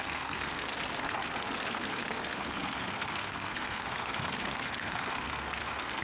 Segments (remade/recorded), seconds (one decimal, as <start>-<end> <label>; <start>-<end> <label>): 0.0-0.7 remade; 0.7-1.7 recorded; 1.7-6.0 remade